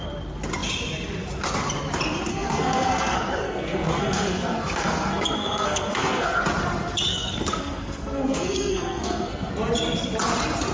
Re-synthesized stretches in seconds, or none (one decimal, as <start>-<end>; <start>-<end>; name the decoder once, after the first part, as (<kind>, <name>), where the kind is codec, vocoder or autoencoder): 2.3-6.4 (codec, SNAC); 7.1-9.5